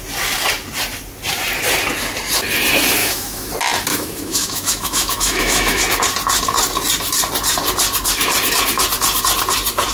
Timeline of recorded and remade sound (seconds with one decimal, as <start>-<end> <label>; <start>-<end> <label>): 0.0-3.0 recorded; 3.0-3.5 remade; 3.5-3.9 recorded; 3.9-5.8 remade; 5.8-9.9 recorded